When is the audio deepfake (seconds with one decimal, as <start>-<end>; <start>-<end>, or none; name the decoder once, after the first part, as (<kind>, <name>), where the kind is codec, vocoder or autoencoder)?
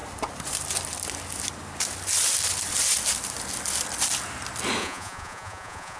4.8-6.0 (vocoder, Vocos)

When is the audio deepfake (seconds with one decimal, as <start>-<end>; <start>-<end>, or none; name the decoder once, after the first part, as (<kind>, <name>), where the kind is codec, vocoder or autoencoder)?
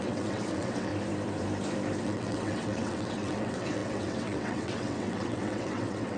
0.0-0.9 (vocoder, WaveNeXt); 2.0-6.2